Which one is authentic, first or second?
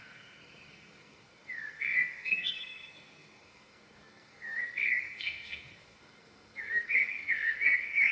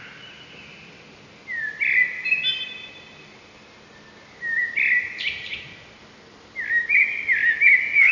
second